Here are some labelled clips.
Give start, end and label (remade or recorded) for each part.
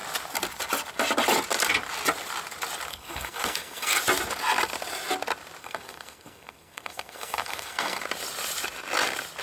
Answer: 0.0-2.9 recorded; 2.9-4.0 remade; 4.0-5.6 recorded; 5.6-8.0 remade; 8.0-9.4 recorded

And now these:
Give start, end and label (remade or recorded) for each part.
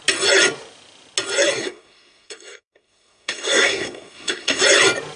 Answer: 0.0-1.6 recorded; 1.6-4.6 remade; 4.6-5.2 recorded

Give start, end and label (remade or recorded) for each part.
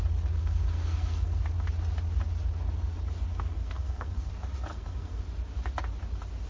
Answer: 0.0-0.4 recorded; 0.4-1.4 remade; 1.4-3.3 recorded; 3.3-4.3 remade; 4.3-4.7 recorded; 4.7-5.2 remade; 5.2-6.5 recorded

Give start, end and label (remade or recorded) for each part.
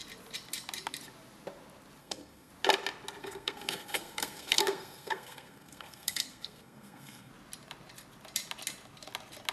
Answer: 0.0-2.0 recorded; 2.0-2.5 remade; 2.5-3.2 recorded; 3.2-7.3 remade; 7.3-9.5 recorded